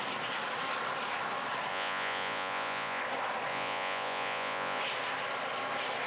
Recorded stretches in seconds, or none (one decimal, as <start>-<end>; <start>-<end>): 0.0-1.7; 3.0-3.5; 4.8-6.1